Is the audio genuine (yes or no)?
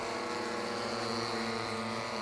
no